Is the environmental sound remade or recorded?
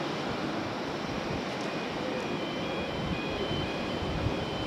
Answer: remade